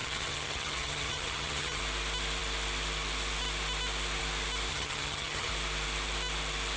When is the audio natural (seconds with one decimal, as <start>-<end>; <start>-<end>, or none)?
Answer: 1.8-4.7; 5.5-6.8